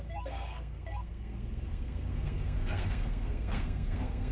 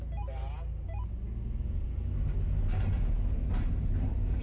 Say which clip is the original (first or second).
second